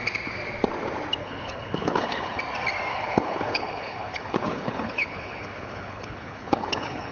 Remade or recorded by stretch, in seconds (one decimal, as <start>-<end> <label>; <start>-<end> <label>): 0.0-1.2 recorded; 1.2-2.4 remade; 2.4-2.9 recorded; 2.9-7.1 remade